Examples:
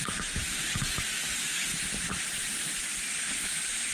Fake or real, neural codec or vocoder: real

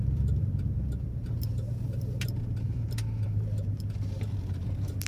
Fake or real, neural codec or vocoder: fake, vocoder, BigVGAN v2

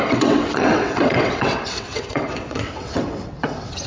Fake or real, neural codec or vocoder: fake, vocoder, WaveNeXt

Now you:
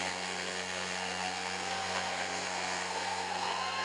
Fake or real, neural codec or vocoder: fake, codec, SNAC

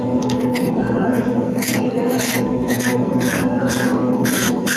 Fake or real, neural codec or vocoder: fake, codec, SNAC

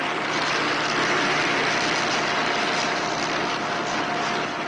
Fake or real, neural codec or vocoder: real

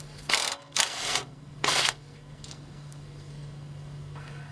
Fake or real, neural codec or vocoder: fake, codec, SNAC